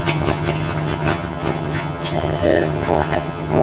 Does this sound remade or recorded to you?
remade